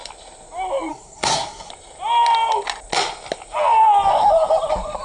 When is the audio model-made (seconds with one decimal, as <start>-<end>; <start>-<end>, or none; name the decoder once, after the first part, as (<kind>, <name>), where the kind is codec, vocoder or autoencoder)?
0.9-1.7 (codec, SNAC)